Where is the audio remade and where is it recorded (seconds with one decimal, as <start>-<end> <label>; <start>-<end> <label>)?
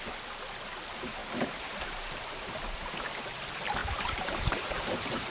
0.0-1.2 recorded; 1.2-2.9 remade; 2.9-3.8 recorded; 3.8-5.3 remade